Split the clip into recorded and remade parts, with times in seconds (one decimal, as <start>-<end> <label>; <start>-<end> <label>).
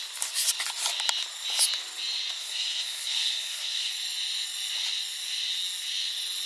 0.0-2.4 recorded; 2.4-3.9 remade; 3.9-6.5 recorded